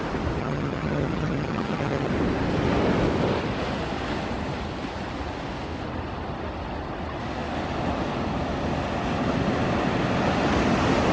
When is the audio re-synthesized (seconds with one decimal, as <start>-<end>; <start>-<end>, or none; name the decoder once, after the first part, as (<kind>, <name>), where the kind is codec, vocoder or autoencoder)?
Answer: 0.4-2.1 (vocoder, HiFi-GAN)